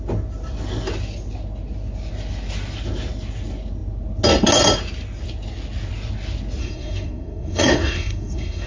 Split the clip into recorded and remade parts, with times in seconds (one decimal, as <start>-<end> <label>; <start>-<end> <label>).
0.0-6.6 recorded; 6.6-8.7 remade